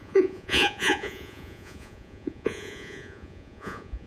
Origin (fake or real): fake